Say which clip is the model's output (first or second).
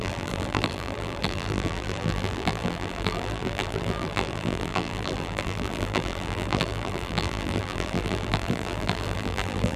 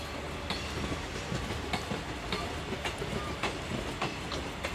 first